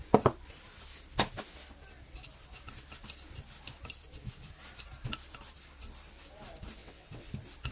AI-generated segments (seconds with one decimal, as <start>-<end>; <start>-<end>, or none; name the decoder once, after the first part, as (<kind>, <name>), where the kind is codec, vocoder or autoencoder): 6.8-7.3 (vocoder, WaveNeXt)